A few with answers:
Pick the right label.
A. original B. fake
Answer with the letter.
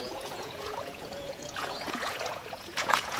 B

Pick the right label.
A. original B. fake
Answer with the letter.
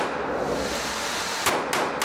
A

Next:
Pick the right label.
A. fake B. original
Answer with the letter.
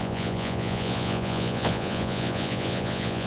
A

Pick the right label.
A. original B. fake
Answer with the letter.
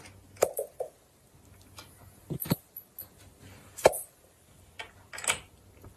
A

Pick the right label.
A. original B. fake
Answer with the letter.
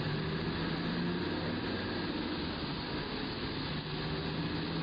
A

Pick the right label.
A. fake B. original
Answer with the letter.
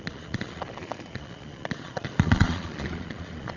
A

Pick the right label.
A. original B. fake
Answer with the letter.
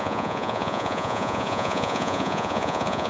B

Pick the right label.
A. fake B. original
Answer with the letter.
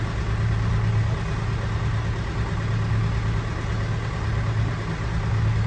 B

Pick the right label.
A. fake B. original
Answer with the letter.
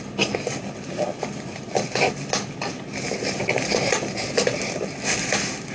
B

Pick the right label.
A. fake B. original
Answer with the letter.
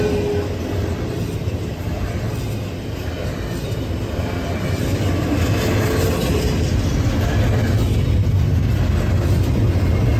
B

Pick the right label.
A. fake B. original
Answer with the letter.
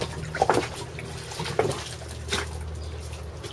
B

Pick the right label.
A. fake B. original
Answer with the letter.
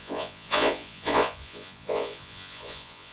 A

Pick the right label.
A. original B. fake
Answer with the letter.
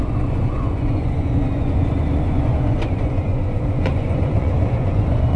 B